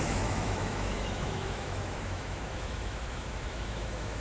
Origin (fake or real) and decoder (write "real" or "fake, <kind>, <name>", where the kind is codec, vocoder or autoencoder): fake, autoencoder, DAC-VAE